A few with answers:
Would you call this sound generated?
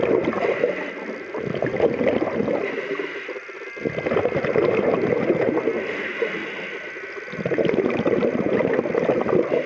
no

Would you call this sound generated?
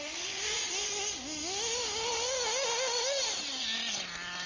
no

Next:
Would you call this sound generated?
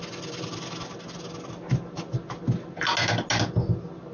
no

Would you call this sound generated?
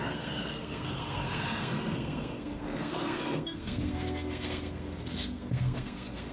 yes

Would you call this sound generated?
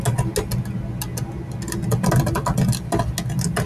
no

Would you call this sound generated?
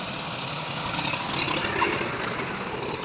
no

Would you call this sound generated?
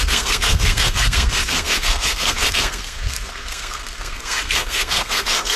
yes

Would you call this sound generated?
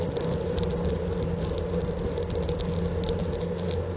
no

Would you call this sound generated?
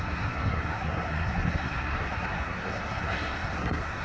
yes